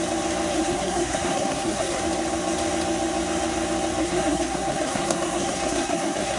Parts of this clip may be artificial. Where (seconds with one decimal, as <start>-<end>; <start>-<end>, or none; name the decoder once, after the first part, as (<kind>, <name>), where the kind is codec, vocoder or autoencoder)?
0.5-2.0 (codec, SNAC); 4.0-6.4